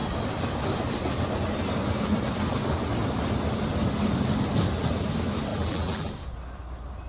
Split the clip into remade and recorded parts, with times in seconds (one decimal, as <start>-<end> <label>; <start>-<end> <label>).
0.0-5.5 recorded; 5.5-6.1 remade; 6.1-7.1 recorded